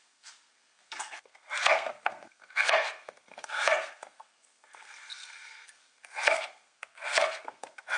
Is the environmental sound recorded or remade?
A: remade